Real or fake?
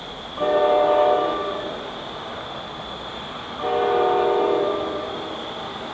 real